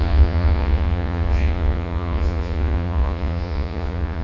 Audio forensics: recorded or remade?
remade